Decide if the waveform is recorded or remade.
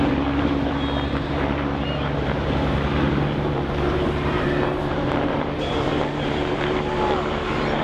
remade